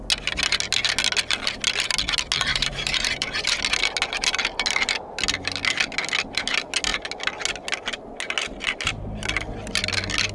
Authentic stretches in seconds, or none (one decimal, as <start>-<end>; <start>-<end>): 0.0-2.5; 3.6-10.3